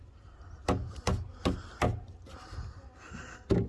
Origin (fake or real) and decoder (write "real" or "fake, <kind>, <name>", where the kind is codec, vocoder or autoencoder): real